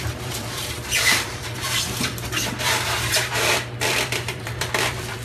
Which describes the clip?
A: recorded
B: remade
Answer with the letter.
B